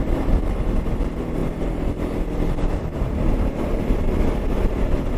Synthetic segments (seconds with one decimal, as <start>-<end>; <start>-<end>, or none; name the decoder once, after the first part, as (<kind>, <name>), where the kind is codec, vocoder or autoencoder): none